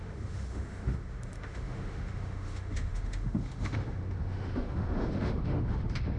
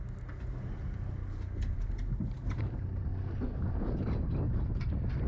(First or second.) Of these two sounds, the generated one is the first